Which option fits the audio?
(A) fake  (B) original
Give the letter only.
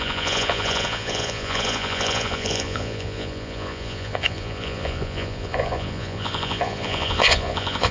A